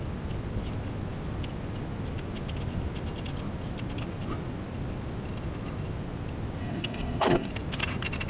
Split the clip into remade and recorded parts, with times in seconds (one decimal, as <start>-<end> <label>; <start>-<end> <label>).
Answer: 0.0-6.6 recorded; 6.6-7.5 remade; 7.5-8.3 recorded